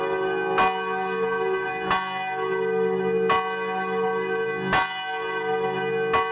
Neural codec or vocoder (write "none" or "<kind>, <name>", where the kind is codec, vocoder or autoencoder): none